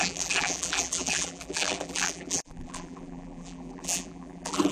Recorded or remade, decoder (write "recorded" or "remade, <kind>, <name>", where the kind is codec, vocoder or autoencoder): remade, vocoder, BigVGAN v2